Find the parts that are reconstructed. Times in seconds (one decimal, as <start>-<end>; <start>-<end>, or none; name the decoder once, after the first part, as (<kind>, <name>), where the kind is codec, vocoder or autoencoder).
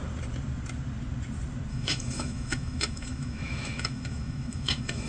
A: 1.7-5.1 (autoencoder, DAC-VAE)